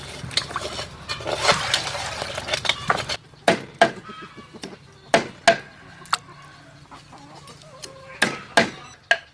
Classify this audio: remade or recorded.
recorded